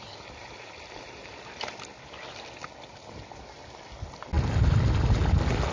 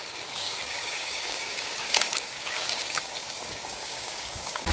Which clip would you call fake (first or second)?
second